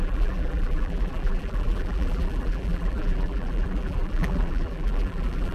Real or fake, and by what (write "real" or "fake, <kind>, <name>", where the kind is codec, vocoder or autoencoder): fake, vocoder, BigVGAN v2